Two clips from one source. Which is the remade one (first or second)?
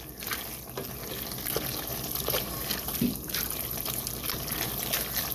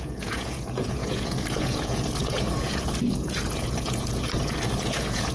second